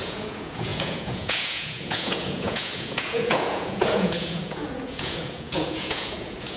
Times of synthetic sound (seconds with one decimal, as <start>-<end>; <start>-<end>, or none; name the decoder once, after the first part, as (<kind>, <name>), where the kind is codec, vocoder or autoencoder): 0.0-6.6 (vocoder, Vocos)